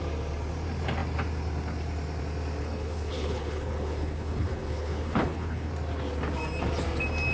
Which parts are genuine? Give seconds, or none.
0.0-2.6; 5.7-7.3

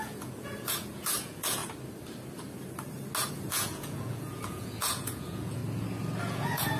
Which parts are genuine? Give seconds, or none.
1.6-3.3; 5.6-6.2

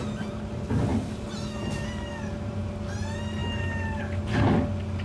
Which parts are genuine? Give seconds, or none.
0.0-5.0

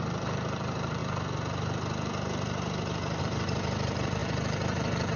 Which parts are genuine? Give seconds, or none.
1.0-3.2